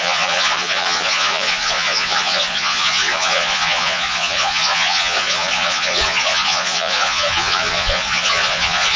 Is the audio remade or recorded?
remade